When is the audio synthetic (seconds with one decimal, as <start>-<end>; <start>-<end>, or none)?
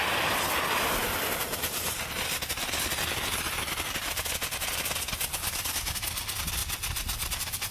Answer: 1.4-6.0